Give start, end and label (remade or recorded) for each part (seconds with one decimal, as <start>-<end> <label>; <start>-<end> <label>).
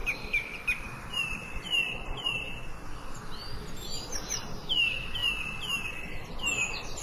0.0-2.4 remade; 2.4-7.0 recorded